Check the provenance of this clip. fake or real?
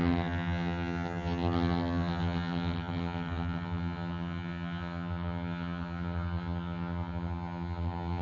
fake